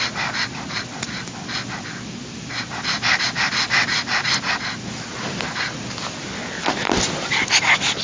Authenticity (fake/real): real